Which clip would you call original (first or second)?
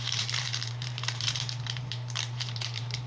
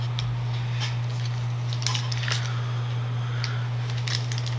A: second